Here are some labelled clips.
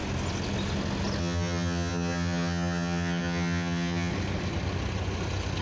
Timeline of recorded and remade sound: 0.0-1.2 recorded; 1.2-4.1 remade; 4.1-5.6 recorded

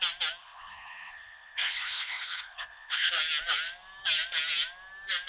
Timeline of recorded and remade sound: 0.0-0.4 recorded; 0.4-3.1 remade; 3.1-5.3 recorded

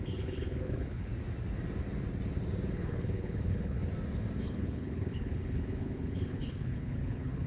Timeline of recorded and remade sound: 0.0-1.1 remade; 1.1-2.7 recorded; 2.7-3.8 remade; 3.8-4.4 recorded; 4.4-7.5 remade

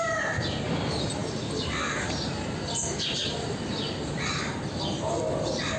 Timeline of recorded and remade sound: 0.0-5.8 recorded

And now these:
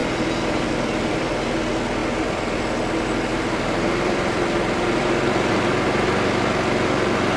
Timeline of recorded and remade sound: 0.0-1.2 remade; 1.2-2.0 recorded; 2.0-2.6 remade; 2.6-3.3 recorded; 3.3-5.5 remade; 5.5-7.4 recorded